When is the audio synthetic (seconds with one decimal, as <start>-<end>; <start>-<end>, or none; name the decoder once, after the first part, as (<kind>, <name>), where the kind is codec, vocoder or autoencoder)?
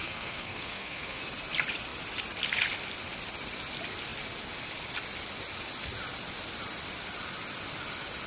0.0-1.2 (codec, SNAC)